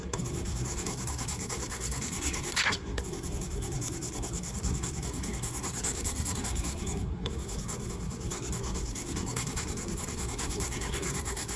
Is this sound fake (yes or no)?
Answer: yes